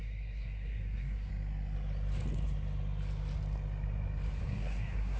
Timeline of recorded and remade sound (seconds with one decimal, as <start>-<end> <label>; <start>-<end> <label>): 0.0-1.3 remade; 1.3-4.4 recorded; 4.4-5.2 remade